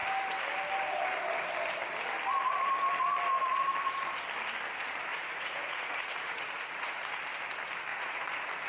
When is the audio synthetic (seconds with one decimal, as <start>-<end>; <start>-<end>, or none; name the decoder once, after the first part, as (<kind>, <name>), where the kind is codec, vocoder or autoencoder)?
5.1-7.1 (vocoder, Vocos); 7.9-8.7